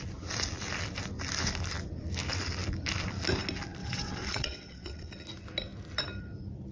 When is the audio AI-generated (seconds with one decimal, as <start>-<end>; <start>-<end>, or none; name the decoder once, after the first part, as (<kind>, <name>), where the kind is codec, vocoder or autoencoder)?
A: 3.8-5.1 (vocoder, WaveNeXt)